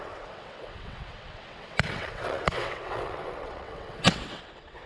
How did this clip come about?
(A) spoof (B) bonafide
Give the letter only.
A